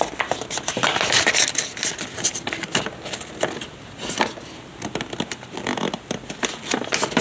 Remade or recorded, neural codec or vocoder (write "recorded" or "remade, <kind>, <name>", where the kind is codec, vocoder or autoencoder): recorded